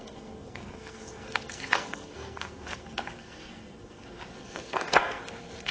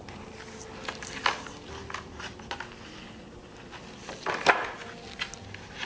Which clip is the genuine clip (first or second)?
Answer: second